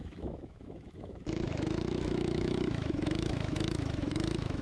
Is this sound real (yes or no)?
no